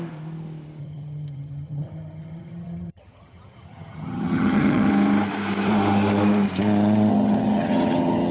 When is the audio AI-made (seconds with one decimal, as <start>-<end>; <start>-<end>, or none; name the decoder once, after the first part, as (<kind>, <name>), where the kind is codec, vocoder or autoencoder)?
0.8-4.9 (vocoder, HiFi-GAN); 7.1-8.3